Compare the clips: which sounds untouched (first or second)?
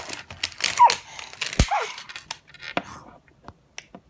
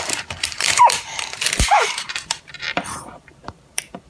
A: first